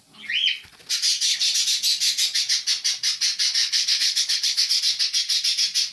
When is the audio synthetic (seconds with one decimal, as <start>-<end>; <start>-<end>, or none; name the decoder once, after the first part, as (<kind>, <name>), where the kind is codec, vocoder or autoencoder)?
3.6-4.8 (codec, HILCodec)